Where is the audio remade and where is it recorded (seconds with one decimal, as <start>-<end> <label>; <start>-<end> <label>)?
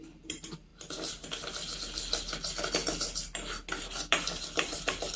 0.0-0.7 remade; 0.7-3.8 recorded; 3.8-5.2 remade